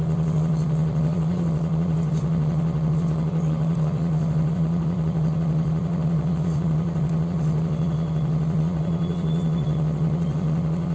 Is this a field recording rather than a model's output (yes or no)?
no